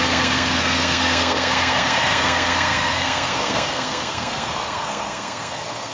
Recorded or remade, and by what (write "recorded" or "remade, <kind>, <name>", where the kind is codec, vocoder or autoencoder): remade, codec, SNAC